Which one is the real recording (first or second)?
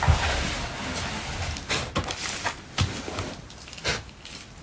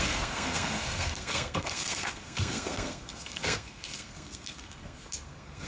first